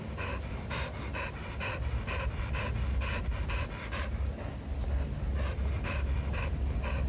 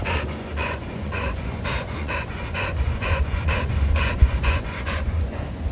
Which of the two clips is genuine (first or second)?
first